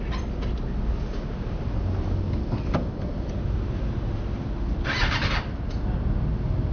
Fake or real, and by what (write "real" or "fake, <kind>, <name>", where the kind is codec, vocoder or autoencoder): real